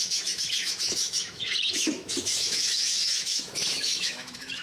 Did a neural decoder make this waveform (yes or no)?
yes